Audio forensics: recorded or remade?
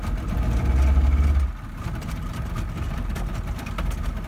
recorded